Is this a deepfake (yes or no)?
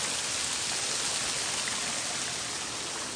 no